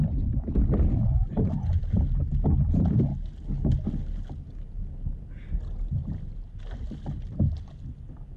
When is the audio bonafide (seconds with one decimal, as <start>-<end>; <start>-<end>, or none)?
0.0-8.4

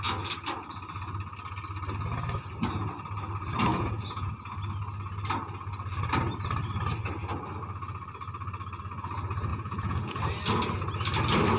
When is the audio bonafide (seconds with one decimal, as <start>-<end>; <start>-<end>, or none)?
0.0-3.7; 4.3-9.5; 10.2-11.6